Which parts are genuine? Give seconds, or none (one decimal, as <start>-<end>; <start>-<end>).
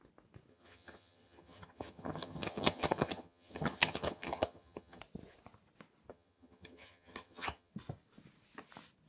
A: 0.0-0.5; 5.0-6.1; 7.7-9.1